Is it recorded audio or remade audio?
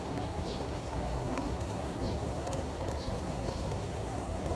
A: remade